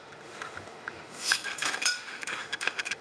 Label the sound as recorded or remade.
remade